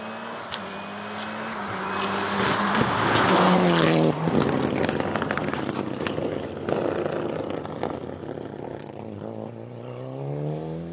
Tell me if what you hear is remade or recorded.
recorded